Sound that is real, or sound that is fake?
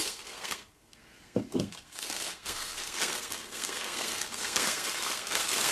fake